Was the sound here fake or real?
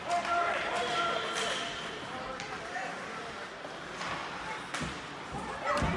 real